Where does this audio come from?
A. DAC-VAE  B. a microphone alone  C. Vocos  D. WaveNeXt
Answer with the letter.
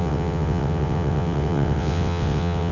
D